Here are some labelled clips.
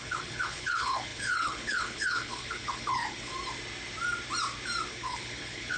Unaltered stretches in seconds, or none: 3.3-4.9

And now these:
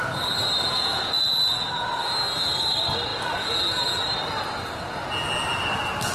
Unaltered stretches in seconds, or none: 0.0-0.6; 1.2-6.1

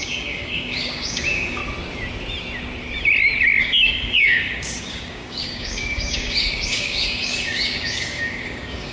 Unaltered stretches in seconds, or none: 1.6-3.6